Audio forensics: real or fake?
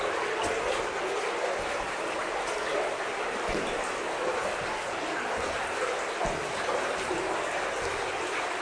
real